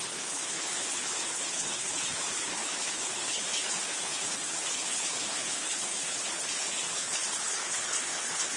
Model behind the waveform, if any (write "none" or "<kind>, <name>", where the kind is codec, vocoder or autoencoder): codec, HILCodec